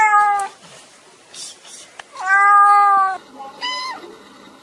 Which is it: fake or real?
real